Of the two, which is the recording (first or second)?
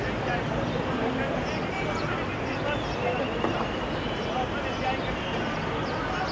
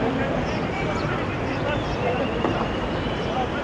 first